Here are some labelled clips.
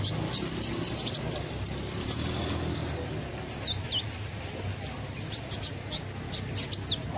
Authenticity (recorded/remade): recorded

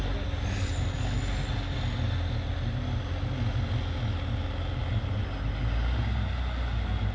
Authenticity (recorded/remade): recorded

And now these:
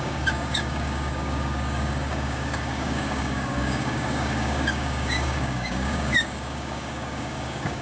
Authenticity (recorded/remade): remade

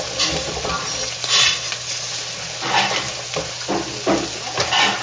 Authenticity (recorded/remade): recorded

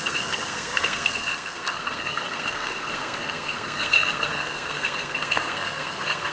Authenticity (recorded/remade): remade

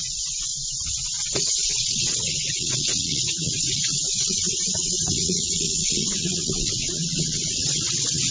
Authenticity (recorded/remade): remade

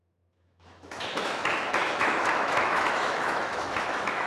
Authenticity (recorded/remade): remade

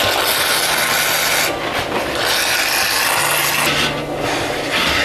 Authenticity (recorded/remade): recorded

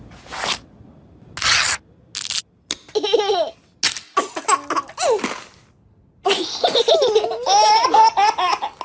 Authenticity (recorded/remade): recorded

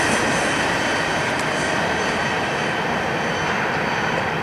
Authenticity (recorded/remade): remade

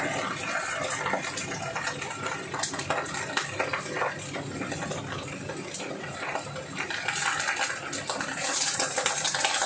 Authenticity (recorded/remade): recorded